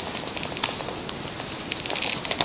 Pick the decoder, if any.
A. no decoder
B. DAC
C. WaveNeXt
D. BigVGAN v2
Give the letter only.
A